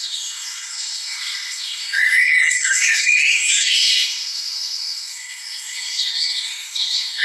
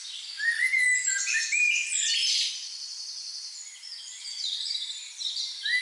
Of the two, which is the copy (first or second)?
first